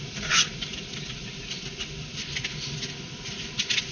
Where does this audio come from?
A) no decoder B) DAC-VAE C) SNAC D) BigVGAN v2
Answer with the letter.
A